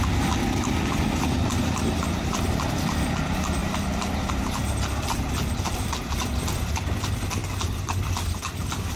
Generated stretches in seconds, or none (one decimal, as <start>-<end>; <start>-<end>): 0.4-1.6; 3.6-4.3; 7.4-9.0